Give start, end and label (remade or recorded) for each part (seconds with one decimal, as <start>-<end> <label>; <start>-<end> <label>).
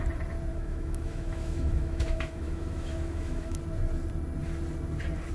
0.0-0.5 recorded; 0.5-3.6 remade; 3.6-5.3 recorded